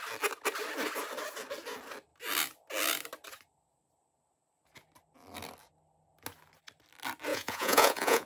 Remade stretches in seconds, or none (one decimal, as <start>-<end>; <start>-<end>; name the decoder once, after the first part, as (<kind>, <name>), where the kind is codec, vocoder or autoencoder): 7.3-8.3 (vocoder, Vocos)